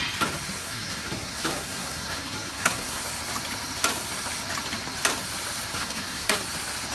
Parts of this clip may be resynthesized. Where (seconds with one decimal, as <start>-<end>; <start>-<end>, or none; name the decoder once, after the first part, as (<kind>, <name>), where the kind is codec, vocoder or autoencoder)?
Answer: 0.6-3.0 (codec, SNAC); 5.7-6.4